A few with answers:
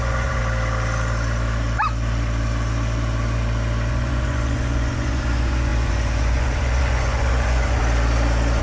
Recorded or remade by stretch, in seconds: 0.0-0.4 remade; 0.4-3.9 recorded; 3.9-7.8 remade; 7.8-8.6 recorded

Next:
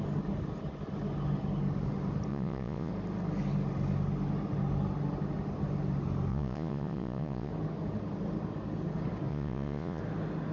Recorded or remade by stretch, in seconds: 0.0-2.3 recorded; 2.3-2.9 remade; 2.9-6.3 recorded; 6.3-7.5 remade; 7.5-9.3 recorded; 9.3-10.0 remade; 10.0-10.5 recorded

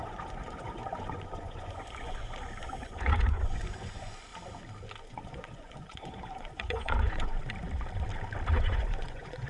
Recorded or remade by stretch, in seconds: 0.0-4.3 remade; 4.3-5.1 recorded; 5.1-7.4 remade; 7.4-8.5 recorded; 8.5-9.5 remade